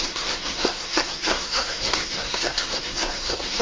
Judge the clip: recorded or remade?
remade